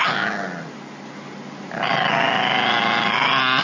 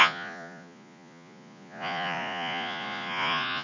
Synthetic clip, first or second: second